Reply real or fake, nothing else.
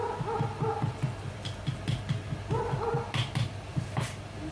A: real